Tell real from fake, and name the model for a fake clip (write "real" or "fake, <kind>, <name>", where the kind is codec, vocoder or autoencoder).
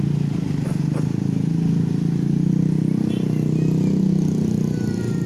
real